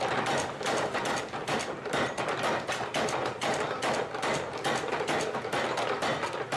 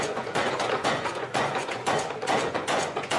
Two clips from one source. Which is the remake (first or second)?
second